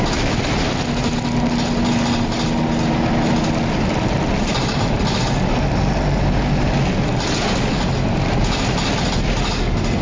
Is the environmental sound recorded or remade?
recorded